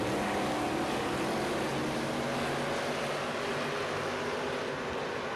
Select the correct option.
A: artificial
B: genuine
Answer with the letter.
B